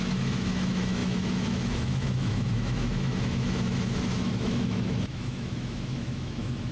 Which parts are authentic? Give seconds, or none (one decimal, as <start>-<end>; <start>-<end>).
none